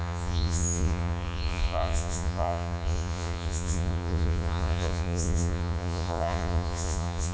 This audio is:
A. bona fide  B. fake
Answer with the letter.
B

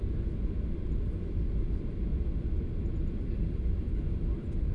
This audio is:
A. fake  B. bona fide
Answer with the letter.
B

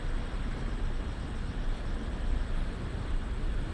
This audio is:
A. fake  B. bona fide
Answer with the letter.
B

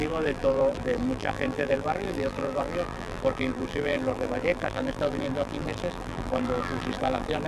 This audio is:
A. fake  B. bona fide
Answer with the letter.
A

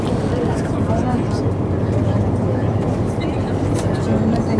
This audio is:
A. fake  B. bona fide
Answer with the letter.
A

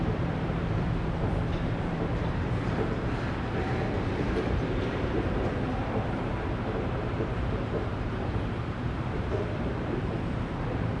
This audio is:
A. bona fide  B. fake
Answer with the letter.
B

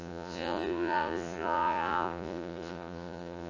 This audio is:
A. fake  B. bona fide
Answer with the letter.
A